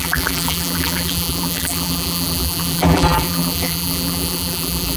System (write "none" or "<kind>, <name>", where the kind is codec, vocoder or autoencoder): vocoder, BigVGAN v2